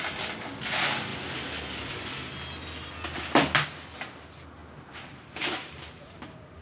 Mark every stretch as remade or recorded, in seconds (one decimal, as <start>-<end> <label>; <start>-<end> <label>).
0.0-4.6 recorded; 4.6-6.6 remade

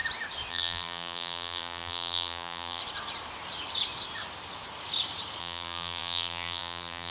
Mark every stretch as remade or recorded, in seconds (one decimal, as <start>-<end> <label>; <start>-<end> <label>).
0.0-0.5 recorded; 0.5-2.8 remade; 2.8-5.4 recorded; 5.4-7.1 remade

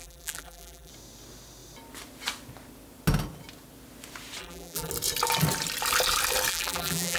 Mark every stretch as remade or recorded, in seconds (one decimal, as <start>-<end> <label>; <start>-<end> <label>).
0.0-0.9 remade; 0.9-4.4 recorded; 4.4-4.9 remade; 4.9-6.5 recorded; 6.5-7.2 remade